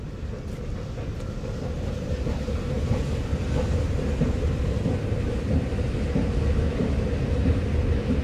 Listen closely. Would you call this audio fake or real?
fake